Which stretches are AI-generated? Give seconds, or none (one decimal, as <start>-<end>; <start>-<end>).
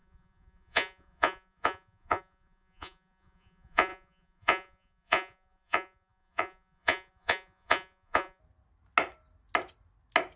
0.0-8.4